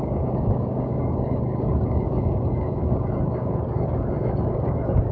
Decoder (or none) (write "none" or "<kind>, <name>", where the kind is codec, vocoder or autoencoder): codec, DAC